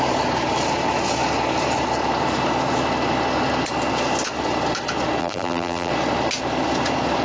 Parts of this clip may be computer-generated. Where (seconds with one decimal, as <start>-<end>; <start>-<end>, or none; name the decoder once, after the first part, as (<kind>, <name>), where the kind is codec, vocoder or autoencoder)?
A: 5.2-5.9 (vocoder, BigVGAN v2)